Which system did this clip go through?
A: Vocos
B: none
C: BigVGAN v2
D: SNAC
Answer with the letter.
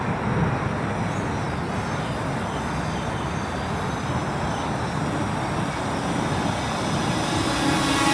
B